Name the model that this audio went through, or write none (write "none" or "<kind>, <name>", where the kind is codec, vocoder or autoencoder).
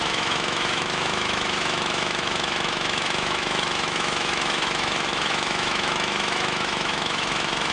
autoencoder, DAC-VAE